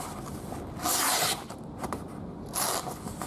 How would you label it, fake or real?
real